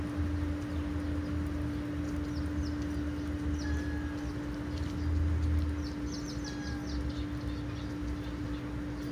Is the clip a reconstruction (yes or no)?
no